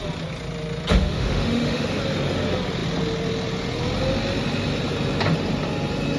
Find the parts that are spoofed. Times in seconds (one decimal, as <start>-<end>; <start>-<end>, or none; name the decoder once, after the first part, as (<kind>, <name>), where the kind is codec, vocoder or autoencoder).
0.9-2.0 (autoencoder, DAC-VAE)